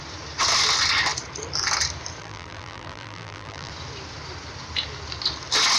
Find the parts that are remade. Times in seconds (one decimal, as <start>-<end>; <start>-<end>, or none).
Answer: 2.2-3.7